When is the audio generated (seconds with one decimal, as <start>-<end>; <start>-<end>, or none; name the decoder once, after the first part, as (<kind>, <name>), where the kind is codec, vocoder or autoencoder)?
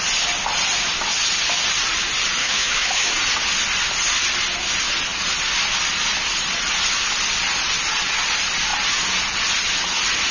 2.4-3.1 (autoencoder, DAC-VAE)